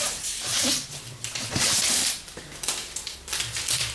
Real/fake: fake